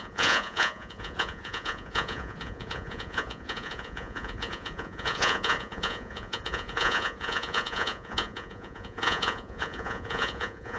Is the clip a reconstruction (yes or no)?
yes